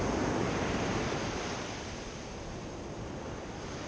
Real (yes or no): yes